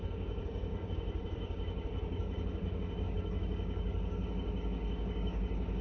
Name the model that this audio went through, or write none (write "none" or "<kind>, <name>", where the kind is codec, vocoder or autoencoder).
codec, DAC